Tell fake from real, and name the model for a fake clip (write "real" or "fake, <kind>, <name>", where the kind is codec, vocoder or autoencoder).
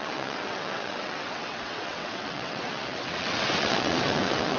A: fake, vocoder, WaveNeXt